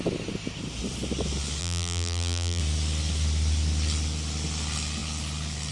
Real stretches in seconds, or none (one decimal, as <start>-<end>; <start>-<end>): 0.0-1.6; 2.6-5.7